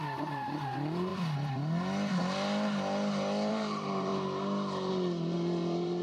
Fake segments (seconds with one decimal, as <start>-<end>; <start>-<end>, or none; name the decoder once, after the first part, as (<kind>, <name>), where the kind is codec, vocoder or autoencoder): 0.0-1.1 (vocoder, BigVGAN v2); 3.5-4.1; 4.9-6.0